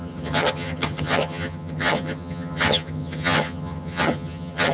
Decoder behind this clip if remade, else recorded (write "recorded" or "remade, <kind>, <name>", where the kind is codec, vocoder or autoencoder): remade, vocoder, HiFi-GAN